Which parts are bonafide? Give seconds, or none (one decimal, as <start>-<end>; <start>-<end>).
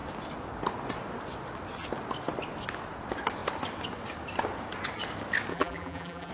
0.0-5.5